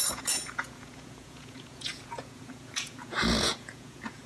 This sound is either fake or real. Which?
fake